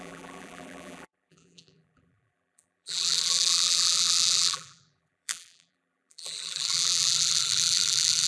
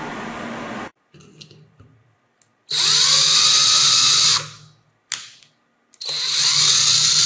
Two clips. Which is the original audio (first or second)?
second